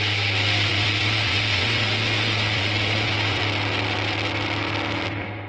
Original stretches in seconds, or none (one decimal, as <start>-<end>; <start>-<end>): 0.0-0.7; 3.4-5.5